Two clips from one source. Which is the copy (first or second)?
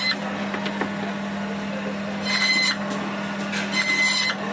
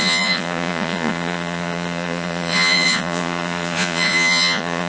second